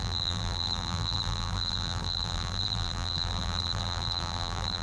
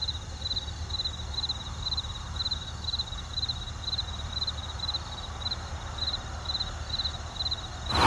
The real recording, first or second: second